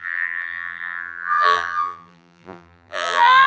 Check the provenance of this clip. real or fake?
fake